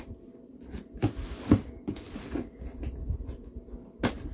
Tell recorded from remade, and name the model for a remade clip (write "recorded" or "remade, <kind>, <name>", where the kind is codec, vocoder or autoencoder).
recorded